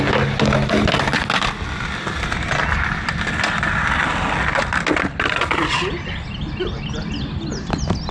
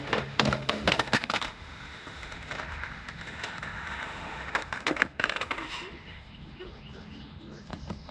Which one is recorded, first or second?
first